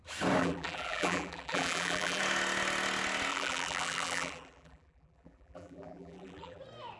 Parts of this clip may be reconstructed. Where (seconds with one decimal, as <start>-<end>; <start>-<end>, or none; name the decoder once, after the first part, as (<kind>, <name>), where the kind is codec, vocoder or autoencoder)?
0.4-2.2 (vocoder, BigVGAN v2); 3.3-6.6